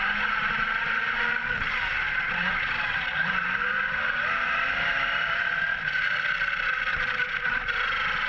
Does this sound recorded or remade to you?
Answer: recorded